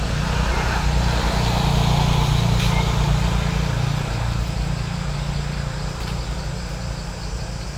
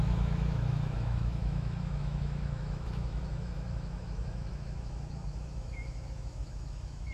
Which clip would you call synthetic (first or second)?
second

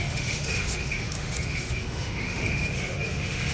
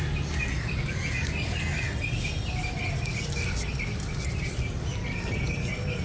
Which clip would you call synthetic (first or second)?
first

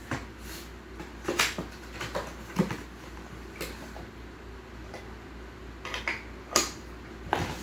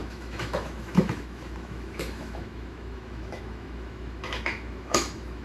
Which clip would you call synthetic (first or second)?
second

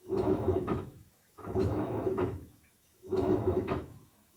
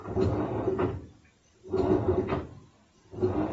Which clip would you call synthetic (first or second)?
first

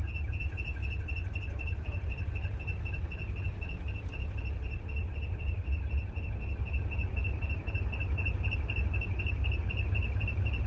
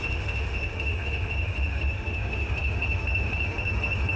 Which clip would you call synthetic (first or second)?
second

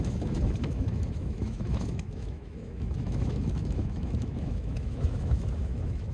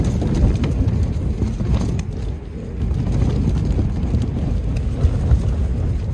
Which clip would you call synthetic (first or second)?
first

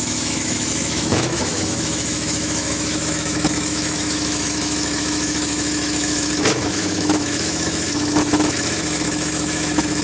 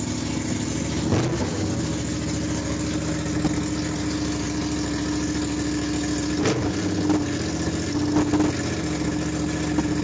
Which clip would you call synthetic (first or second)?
first